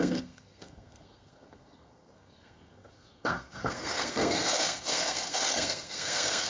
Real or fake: fake